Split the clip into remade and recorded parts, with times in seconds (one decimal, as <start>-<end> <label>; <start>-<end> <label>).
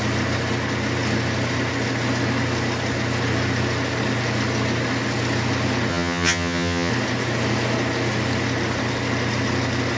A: 0.0-5.9 recorded; 5.9-6.9 remade; 6.9-10.0 recorded